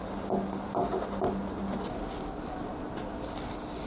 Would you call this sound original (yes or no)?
yes